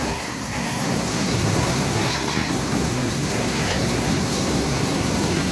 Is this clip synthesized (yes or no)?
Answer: yes